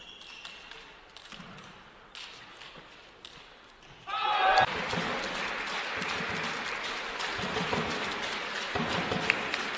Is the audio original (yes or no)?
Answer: yes